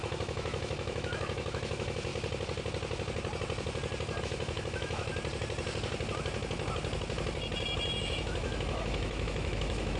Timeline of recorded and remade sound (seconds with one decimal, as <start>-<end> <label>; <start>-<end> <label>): 0.0-2.1 remade; 2.1-4.2 recorded; 4.2-5.1 remade; 5.1-8.0 recorded; 8.0-10.0 remade